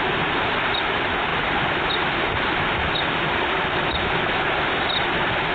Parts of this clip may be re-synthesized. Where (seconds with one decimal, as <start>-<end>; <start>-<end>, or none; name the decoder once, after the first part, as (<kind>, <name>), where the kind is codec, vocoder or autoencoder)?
none